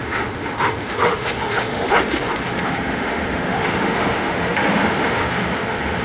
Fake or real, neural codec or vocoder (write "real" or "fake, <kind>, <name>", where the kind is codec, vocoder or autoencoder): fake, autoencoder, DAC-VAE